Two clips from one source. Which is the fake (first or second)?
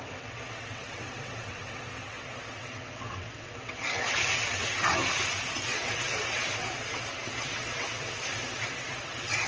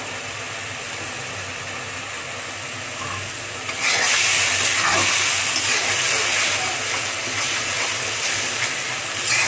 first